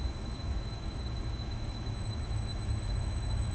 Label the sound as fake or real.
fake